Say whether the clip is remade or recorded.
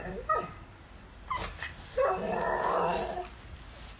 recorded